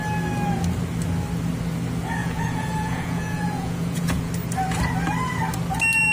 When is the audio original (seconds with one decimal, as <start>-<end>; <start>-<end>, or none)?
0.0-2.2; 4.3-6.1